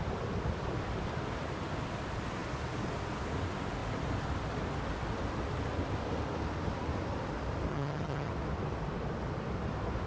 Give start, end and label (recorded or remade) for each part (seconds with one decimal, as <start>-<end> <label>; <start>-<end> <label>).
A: 0.0-7.7 recorded; 7.7-8.3 remade; 8.3-10.1 recorded